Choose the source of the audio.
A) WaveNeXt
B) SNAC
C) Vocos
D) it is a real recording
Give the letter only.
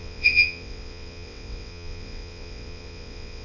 A